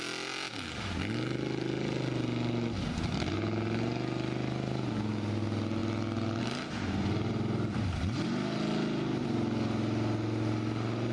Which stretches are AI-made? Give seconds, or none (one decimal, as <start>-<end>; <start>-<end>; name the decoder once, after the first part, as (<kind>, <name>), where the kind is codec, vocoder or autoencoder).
none